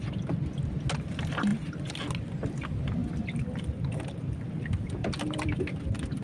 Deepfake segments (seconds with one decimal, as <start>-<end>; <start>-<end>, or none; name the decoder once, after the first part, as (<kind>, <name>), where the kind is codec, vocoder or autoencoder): 3.0-3.5 (vocoder, BigVGAN v2); 5.0-5.6